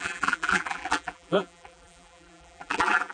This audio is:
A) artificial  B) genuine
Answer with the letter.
A